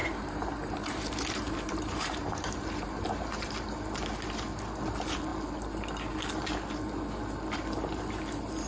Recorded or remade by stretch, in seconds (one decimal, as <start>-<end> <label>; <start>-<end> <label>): 0.0-3.5 remade; 3.5-8.7 recorded